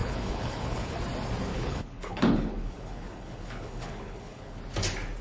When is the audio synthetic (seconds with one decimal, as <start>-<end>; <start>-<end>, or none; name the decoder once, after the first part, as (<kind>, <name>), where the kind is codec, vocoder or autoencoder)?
0.0-1.0 (codec, HILCodec); 1.5-4.6

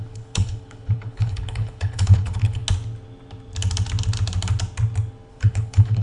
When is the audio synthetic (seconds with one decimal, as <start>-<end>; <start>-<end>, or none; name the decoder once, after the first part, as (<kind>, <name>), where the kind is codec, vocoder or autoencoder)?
0.0-2.6 (codec, HILCodec); 5.3-6.0

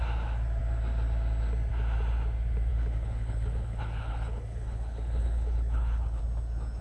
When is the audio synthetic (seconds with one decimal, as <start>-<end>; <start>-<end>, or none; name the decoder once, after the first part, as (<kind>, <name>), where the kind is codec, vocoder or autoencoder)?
2.7-6.2 (codec, HILCodec)

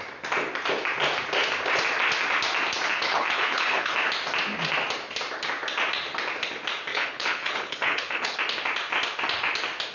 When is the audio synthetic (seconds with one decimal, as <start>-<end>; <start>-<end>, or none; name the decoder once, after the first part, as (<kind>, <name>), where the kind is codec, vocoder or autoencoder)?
2.9-3.9 (codec, HILCodec); 6.9-8.4

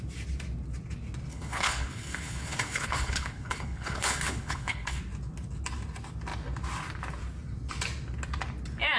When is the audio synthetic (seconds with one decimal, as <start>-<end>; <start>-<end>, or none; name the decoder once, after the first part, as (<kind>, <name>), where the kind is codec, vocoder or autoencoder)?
1.3-5.0 (codec, HILCodec)

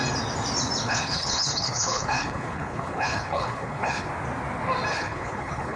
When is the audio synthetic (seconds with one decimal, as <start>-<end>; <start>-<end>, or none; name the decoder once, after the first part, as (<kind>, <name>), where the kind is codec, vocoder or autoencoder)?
0.8-4.1 (codec, HILCodec); 4.9-5.8